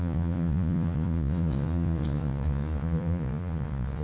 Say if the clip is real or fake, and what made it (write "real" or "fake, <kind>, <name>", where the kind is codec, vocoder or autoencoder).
fake, vocoder, Vocos